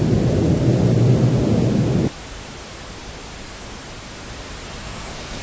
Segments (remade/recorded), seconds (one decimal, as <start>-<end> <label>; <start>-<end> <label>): 0.0-4.8 recorded; 4.8-5.4 remade